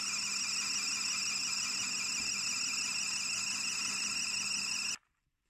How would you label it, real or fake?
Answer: real